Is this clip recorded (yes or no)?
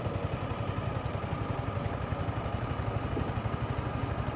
yes